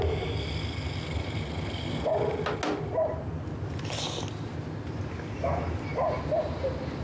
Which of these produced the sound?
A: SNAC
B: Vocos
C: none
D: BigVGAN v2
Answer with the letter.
C